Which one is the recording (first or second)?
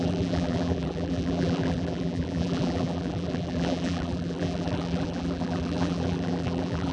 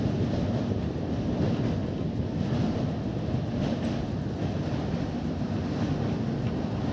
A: second